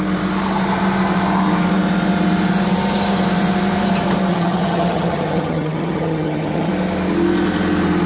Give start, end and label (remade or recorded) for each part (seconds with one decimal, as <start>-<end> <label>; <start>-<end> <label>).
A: 0.0-4.3 recorded; 4.3-6.7 remade; 6.7-8.1 recorded